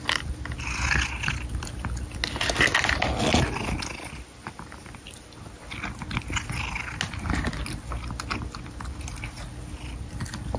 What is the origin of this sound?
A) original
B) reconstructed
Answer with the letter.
A